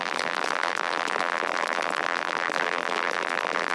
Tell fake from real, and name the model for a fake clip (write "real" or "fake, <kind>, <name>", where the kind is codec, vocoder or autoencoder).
fake, vocoder, BigVGAN v2